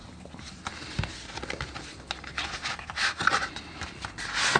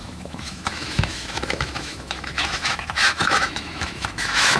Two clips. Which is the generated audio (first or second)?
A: second